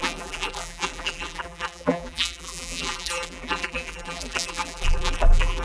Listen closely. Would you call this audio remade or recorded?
remade